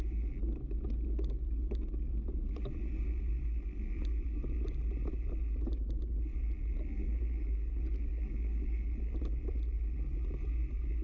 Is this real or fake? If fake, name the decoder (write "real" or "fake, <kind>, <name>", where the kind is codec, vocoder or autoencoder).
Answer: real